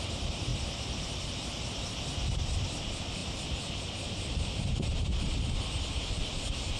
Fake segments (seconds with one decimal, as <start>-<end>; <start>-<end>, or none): 0.0-6.8